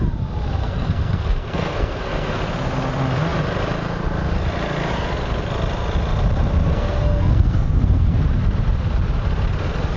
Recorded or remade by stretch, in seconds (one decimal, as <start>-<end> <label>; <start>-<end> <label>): 0.0-0.6 recorded; 0.6-2.4 remade; 2.4-6.7 recorded; 6.7-8.2 remade; 8.2-10.0 recorded